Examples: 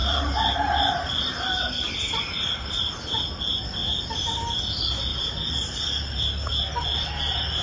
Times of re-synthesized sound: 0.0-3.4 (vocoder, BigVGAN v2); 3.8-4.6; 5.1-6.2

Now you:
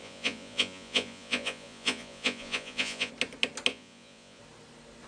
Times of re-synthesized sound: 0.0-3.1 (vocoder, Vocos); 3.7-4.4

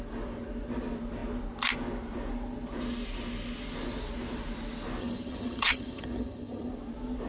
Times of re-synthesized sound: 5.0-6.7 (vocoder, HiFi-GAN)